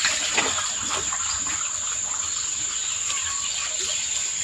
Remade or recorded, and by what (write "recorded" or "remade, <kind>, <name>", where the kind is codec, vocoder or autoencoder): recorded